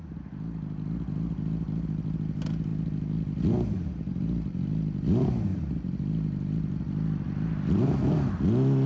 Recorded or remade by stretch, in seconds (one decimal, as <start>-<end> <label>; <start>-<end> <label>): 0.0-8.9 recorded